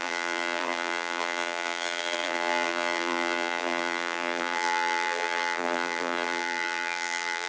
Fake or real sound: fake